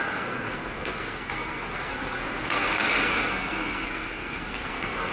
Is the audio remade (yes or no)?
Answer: yes